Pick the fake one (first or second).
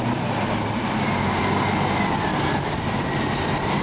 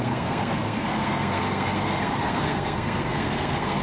second